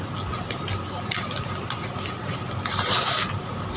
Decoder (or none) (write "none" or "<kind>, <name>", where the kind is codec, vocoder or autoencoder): none